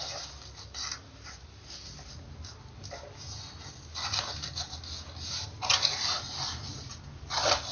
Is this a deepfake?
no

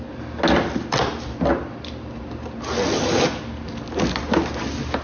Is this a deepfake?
no